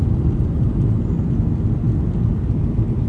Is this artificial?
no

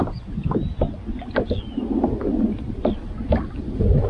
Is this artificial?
yes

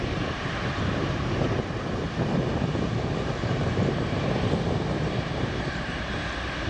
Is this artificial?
yes